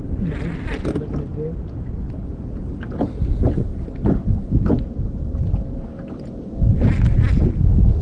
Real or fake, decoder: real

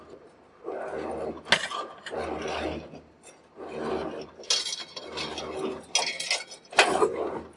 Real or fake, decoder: real